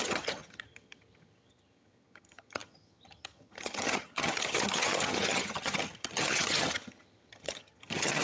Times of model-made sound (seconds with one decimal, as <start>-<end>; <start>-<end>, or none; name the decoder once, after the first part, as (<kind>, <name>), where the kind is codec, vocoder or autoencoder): 0.0-8.2 (vocoder, HiFi-GAN)